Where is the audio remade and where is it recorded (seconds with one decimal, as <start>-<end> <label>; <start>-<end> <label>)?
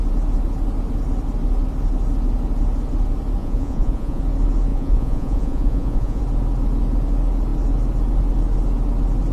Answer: 0.0-3.4 recorded; 3.4-4.2 remade; 4.2-4.7 recorded; 4.7-6.2 remade; 6.2-9.3 recorded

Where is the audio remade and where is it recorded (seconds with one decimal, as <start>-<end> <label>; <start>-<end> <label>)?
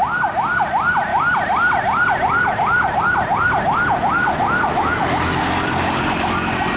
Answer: 0.0-6.8 recorded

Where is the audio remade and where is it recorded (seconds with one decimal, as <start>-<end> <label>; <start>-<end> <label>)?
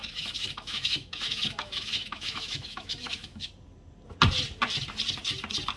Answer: 0.0-3.5 remade; 3.5-5.8 recorded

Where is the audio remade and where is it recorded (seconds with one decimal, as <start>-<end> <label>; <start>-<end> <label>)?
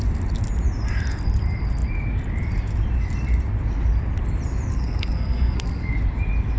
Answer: 0.0-4.7 recorded; 4.7-6.0 remade; 6.0-6.6 recorded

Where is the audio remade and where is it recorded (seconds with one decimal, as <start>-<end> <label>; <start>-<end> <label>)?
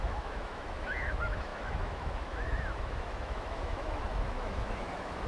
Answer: 0.0-5.3 remade